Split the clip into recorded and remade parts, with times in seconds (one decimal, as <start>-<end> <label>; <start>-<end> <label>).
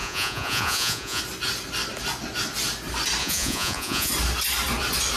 0.0-1.2 remade; 1.2-3.2 recorded; 3.2-4.1 remade; 4.1-5.2 recorded